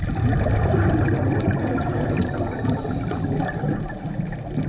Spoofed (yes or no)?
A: no